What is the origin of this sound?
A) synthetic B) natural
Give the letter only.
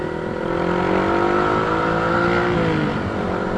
B